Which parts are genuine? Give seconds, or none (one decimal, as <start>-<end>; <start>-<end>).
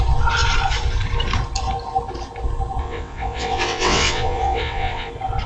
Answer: 0.0-2.8; 5.1-5.5